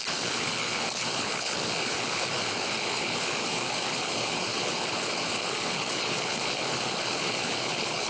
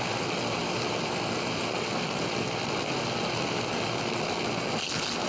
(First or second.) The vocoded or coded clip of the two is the first